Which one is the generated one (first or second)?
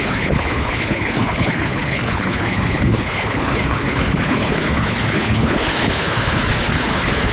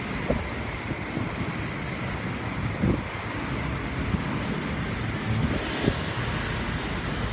first